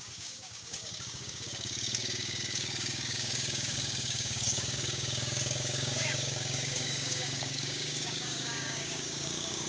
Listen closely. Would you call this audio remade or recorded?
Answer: remade